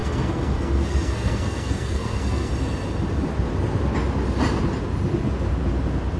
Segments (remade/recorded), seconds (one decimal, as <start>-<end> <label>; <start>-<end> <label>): 0.0-2.5 remade; 2.5-6.2 recorded